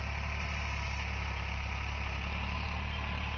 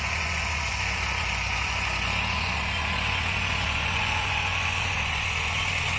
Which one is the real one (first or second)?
first